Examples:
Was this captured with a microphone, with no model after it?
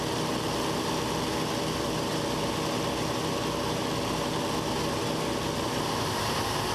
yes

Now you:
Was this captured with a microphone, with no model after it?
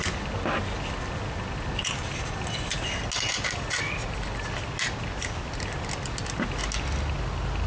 yes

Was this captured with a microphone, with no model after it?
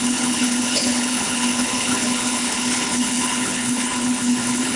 no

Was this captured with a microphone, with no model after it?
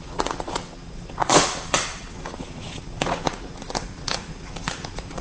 no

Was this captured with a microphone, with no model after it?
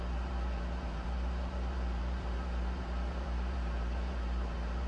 no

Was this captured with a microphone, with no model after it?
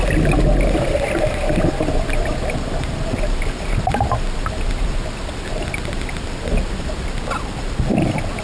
yes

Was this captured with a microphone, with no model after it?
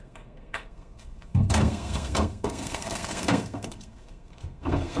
no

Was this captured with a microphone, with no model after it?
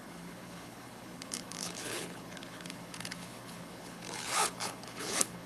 no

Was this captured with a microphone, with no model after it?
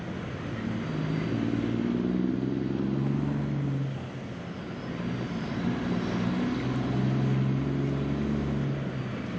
yes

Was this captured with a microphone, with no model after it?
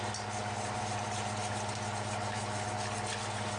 yes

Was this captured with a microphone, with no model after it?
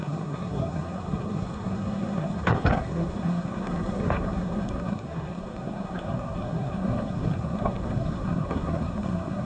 no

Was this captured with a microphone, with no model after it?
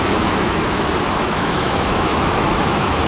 no